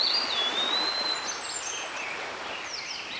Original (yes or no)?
yes